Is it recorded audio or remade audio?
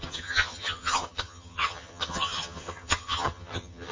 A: remade